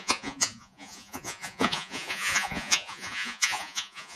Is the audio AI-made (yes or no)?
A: yes